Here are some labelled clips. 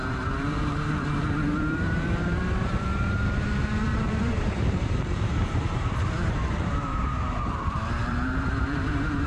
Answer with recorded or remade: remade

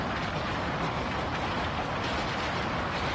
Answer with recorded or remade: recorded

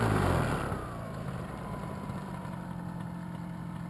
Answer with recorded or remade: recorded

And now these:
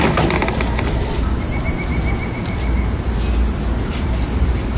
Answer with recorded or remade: recorded